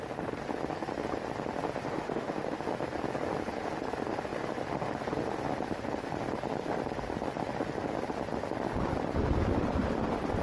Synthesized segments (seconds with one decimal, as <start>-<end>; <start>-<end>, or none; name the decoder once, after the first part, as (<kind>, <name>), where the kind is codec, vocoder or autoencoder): 1.9-2.6 (autoencoder, DAC-VAE)